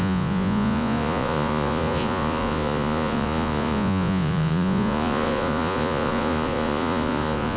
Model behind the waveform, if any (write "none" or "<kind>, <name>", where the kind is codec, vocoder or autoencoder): vocoder, Vocos